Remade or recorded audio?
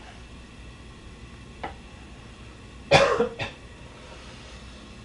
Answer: recorded